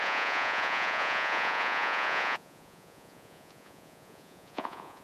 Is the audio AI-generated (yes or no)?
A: yes